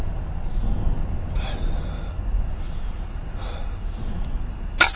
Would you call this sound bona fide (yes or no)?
yes